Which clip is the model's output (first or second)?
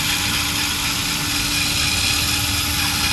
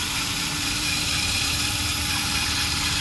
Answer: second